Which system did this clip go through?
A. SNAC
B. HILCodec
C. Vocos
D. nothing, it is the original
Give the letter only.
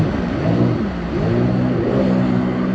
D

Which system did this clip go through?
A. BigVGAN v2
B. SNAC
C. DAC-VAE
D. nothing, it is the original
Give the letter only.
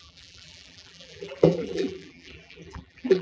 A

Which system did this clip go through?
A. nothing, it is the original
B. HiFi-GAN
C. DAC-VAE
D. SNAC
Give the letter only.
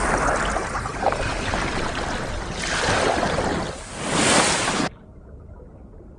A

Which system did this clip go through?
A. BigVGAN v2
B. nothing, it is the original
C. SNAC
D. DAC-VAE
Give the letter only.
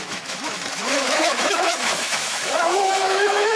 D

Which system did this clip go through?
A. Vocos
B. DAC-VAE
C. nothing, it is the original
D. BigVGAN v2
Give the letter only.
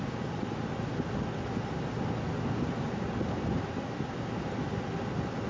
C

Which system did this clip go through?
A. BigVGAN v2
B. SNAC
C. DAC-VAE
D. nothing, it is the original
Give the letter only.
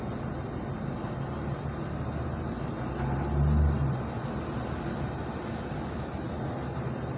D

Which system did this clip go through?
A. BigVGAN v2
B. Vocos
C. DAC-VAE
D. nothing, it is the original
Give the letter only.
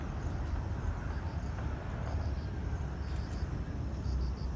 D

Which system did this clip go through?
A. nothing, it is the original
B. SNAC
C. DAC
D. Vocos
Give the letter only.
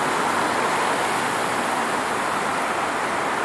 A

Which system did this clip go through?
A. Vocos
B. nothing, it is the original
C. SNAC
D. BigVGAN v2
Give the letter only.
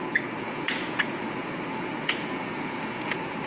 A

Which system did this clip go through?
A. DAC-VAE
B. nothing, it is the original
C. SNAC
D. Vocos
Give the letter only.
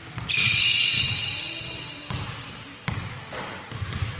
B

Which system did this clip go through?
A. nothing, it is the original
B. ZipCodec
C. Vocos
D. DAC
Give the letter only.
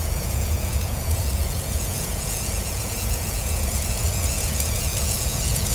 C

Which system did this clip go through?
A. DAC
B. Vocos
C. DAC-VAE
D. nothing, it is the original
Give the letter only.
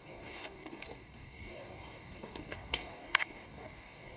A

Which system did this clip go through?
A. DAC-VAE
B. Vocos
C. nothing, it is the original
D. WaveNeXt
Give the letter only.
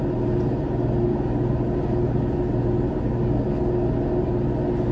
C